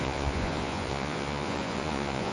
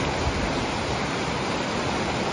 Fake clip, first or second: first